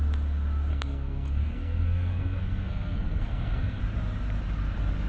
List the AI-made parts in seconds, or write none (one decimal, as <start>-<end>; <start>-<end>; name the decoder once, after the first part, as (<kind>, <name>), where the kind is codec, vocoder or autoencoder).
0.7-3.8 (codec, SNAC)